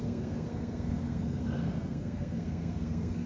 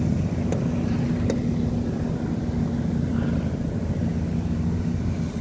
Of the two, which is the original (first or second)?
second